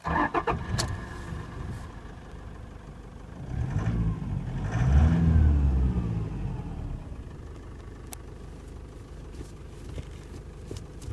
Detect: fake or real real